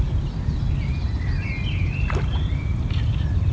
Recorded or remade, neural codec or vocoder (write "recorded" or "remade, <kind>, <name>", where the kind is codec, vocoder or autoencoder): recorded